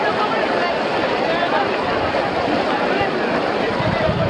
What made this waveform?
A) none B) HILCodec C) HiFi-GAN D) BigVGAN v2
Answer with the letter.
A